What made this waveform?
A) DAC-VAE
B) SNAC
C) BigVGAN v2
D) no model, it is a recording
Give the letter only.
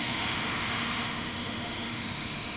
A